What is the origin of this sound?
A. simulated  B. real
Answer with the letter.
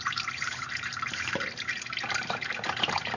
A